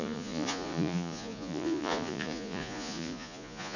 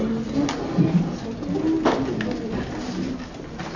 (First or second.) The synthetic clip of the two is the first